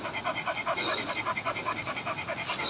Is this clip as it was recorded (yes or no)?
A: yes